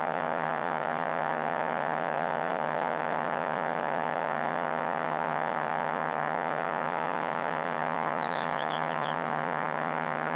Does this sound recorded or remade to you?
remade